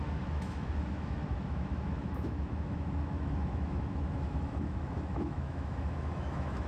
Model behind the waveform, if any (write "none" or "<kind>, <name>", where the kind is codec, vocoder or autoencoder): autoencoder, DAC-VAE